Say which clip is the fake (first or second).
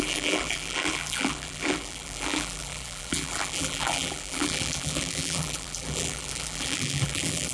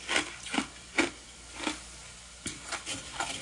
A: first